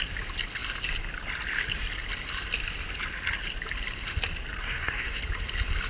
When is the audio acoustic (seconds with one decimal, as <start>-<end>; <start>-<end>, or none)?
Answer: 0.0-4.6; 5.2-5.9